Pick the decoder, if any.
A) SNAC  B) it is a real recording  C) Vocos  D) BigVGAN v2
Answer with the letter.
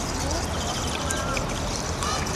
B